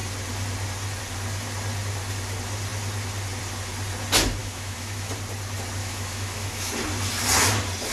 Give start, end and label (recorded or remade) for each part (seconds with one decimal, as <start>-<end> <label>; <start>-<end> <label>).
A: 0.0-4.4 recorded; 4.4-5.1 remade; 5.1-5.8 recorded; 5.8-6.7 remade; 6.7-7.9 recorded